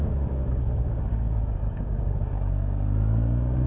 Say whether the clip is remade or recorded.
remade